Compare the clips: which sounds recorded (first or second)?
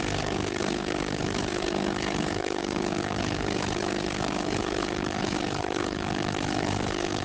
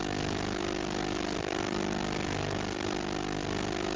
second